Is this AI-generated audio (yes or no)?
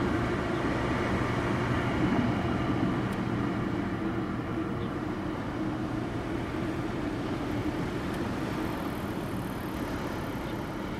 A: no